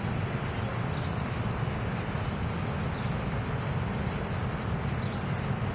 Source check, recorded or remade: recorded